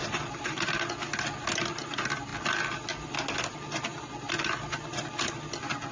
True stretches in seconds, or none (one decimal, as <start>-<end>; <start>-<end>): 0.7-5.9